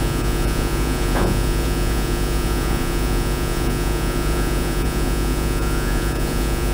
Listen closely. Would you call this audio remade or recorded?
remade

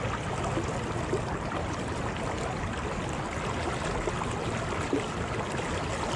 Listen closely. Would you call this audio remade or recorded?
recorded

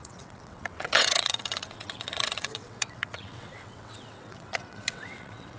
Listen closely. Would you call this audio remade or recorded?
remade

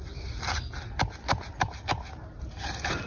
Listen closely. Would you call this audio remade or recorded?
recorded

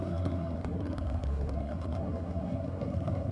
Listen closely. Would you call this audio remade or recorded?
remade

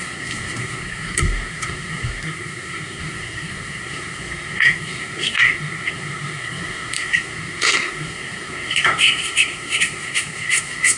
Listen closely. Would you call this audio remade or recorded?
remade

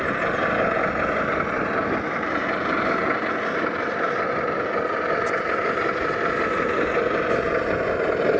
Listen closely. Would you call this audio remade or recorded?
recorded